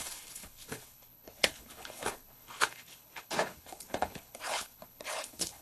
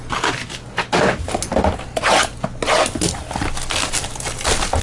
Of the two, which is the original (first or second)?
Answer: second